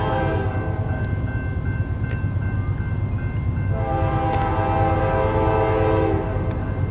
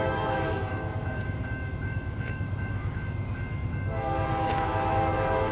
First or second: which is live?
first